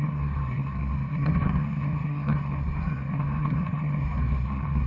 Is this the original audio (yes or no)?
no